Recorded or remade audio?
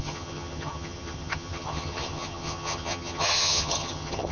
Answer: remade